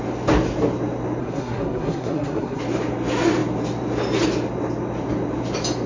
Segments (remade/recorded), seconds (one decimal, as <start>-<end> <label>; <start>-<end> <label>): 0.0-1.2 recorded; 1.2-2.6 remade; 2.6-5.9 recorded